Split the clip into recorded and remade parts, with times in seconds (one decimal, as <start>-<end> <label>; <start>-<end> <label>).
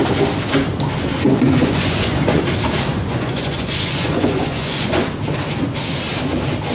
0.0-1.1 recorded; 1.1-2.4 remade; 2.4-2.9 recorded; 2.9-5.0 remade; 5.0-6.7 recorded